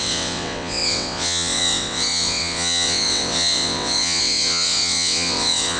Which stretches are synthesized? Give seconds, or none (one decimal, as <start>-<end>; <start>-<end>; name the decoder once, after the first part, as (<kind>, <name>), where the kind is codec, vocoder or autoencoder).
0.0-5.8 (vocoder, WaveNeXt)